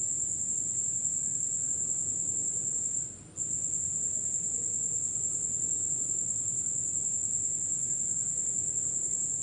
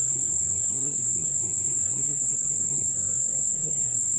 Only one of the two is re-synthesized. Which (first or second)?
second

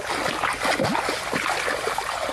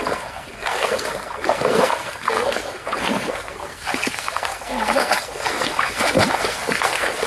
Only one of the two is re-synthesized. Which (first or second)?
second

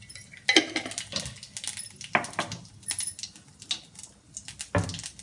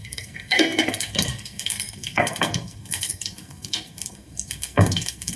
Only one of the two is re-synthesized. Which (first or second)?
second